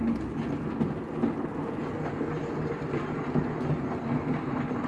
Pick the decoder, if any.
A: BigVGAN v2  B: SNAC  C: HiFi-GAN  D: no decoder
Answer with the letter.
D